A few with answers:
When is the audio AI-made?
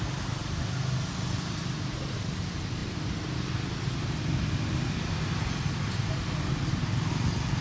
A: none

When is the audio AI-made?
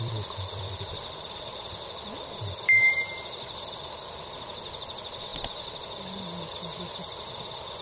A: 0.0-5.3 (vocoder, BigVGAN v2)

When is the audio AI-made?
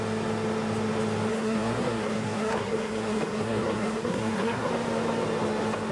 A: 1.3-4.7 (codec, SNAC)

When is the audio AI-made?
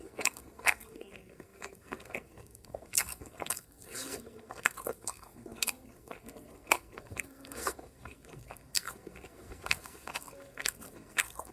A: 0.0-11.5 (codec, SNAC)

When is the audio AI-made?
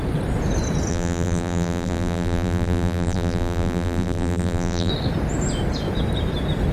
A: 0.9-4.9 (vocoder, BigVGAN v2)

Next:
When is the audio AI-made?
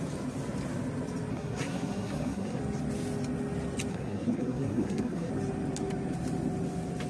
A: 1.3-2.6 (codec, SNAC); 3.9-5.3